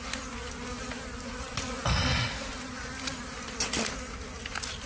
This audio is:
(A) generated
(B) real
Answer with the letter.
B